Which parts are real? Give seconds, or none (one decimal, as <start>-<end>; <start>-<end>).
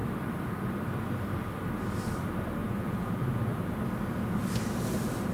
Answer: 0.0-2.6; 3.7-5.3